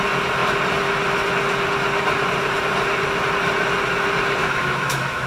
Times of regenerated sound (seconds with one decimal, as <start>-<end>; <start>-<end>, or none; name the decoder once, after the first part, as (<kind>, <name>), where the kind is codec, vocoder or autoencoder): 4.4-5.3 (autoencoder, DAC-VAE)